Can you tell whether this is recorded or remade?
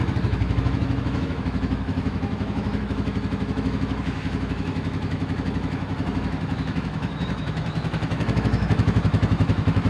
remade